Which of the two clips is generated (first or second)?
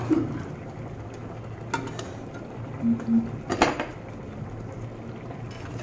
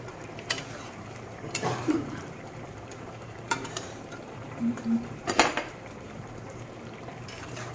second